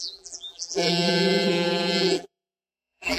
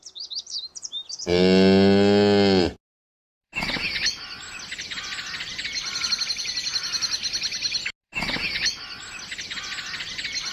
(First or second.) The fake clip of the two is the first